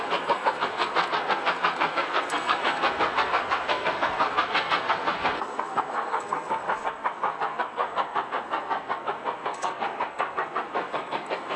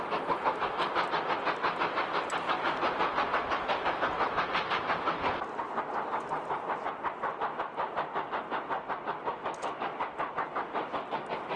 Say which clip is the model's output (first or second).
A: first